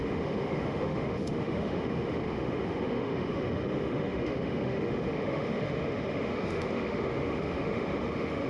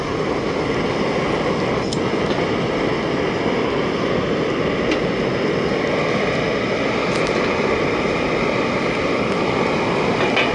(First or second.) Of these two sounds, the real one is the second